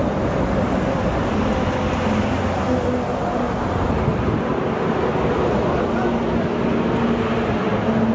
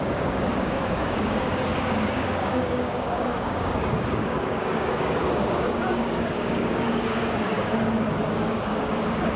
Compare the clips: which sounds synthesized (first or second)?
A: second